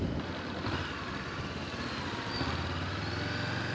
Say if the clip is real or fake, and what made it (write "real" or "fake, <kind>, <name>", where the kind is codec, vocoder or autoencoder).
real